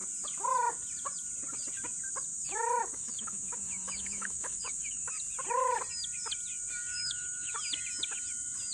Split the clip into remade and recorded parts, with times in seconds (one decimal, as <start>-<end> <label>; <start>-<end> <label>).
0.0-2.3 recorded; 2.3-5.1 remade; 5.1-6.9 recorded; 6.9-7.5 remade; 7.5-8.7 recorded